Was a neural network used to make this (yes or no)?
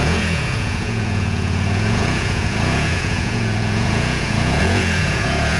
yes